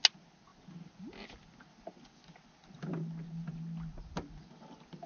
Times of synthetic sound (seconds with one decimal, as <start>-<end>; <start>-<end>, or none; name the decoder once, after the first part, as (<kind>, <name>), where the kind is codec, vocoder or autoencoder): none